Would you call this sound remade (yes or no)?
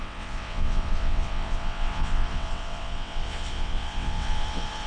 yes